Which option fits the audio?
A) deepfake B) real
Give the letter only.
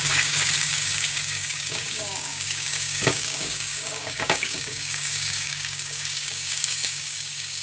A